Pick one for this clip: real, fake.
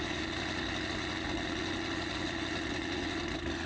real